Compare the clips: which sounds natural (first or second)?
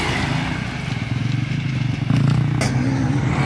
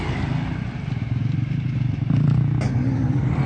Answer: first